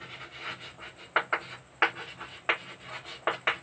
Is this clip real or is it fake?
real